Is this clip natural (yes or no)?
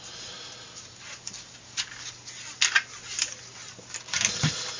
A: yes